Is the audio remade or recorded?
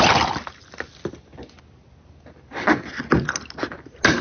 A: recorded